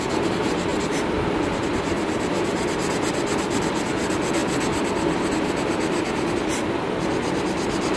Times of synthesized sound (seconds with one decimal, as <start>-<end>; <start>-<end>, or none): none